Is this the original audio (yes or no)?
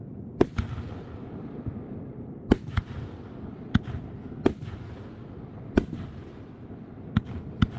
yes